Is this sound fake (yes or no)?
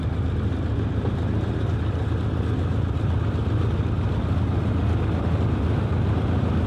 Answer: no